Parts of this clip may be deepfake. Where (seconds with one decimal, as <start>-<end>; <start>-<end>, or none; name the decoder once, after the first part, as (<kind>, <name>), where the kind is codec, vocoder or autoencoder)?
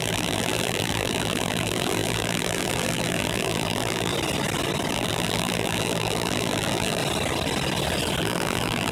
0.0-4.1 (vocoder, BigVGAN v2); 4.9-7.0; 8.2-8.9